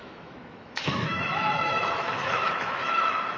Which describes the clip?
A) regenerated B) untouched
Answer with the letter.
A